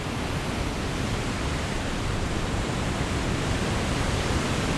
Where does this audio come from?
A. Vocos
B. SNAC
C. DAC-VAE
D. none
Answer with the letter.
D